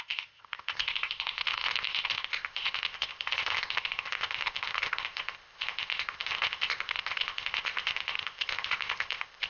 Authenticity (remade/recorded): remade